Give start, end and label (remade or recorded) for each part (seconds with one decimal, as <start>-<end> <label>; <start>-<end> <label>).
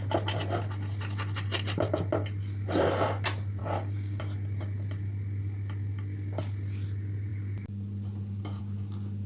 0.0-3.6 recorded; 3.6-4.2 remade; 4.2-9.3 recorded